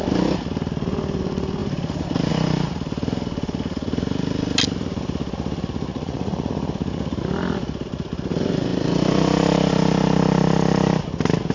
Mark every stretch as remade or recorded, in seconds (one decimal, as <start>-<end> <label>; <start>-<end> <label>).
0.0-5.9 recorded; 5.9-6.5 remade; 6.5-11.5 recorded

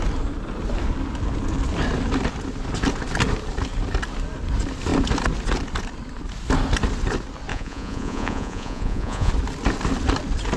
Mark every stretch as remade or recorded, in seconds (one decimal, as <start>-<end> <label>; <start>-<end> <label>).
0.0-7.5 recorded; 7.5-9.3 remade; 9.3-10.6 recorded